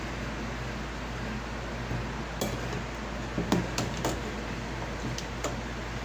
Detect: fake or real real